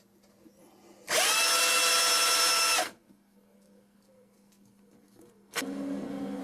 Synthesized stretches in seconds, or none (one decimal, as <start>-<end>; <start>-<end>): 2.8-6.4